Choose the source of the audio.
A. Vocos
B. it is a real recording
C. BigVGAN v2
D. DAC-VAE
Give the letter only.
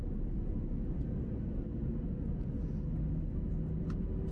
B